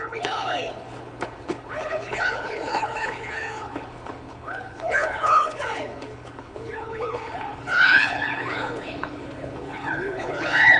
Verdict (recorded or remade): remade